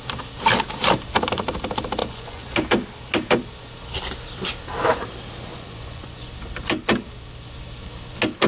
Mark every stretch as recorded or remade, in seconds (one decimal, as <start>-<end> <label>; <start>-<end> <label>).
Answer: 0.0-2.0 recorded; 2.0-2.5 remade; 2.5-5.5 recorded; 5.5-6.3 remade; 6.3-8.5 recorded